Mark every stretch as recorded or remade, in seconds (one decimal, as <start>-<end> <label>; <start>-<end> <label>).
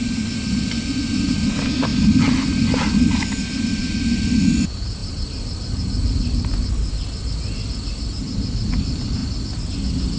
0.0-5.0 recorded; 5.0-6.7 remade; 6.7-10.2 recorded